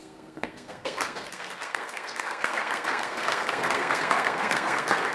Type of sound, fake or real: fake